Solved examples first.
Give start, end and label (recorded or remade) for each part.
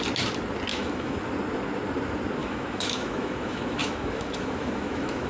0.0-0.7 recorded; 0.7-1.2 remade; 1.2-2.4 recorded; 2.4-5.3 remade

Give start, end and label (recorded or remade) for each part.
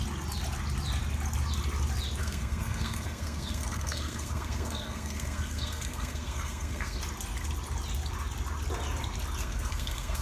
0.0-2.2 recorded; 2.2-7.0 remade; 7.0-9.4 recorded; 9.4-10.2 remade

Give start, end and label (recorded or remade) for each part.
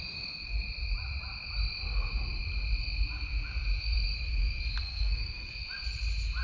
0.0-4.8 recorded; 4.8-5.5 remade; 5.5-6.4 recorded